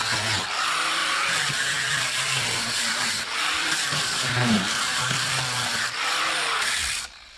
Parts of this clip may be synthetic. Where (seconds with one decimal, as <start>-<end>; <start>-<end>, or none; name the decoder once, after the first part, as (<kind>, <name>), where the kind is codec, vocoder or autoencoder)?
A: 1.0-5.4 (vocoder, BigVGAN v2)